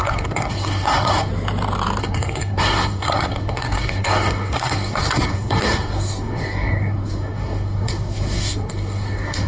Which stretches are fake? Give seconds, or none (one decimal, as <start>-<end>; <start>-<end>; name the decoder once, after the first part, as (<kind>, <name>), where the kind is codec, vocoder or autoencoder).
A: 0.0-1.3 (codec, SNAC); 2.0-9.5